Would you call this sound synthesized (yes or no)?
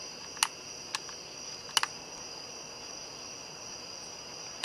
no